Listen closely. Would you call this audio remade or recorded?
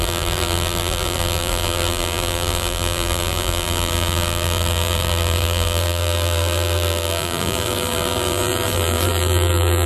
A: remade